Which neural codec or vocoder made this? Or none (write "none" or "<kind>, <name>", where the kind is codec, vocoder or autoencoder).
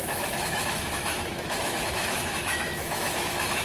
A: autoencoder, DAC-VAE